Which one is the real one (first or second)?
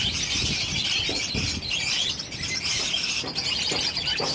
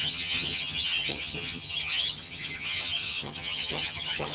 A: first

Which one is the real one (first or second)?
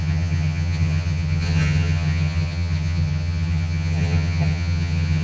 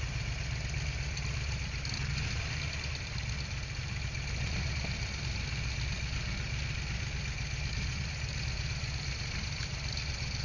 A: second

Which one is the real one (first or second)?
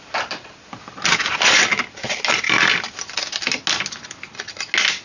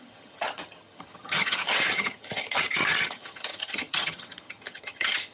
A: first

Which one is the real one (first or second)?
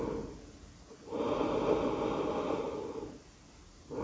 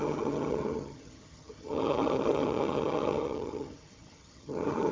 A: first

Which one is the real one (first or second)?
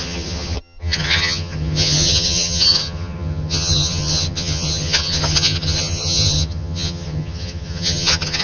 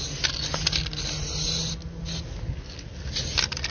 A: second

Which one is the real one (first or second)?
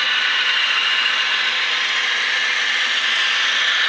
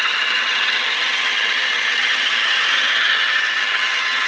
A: first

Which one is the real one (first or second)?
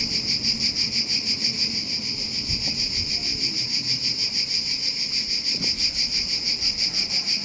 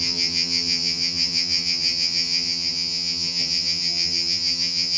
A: first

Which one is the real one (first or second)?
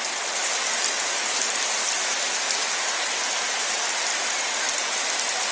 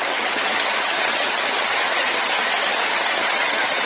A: first